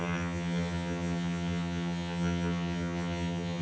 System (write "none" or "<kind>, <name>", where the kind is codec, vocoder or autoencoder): vocoder, HiFi-GAN